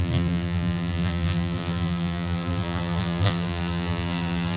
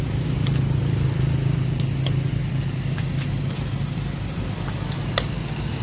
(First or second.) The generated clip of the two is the first